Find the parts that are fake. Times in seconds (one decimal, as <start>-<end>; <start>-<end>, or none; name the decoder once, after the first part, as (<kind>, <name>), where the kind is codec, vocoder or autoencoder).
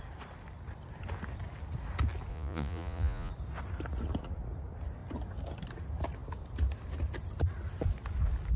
2.3-3.3 (vocoder, Vocos)